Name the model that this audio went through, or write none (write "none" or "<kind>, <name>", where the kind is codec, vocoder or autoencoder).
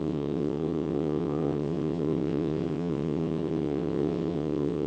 vocoder, WaveNeXt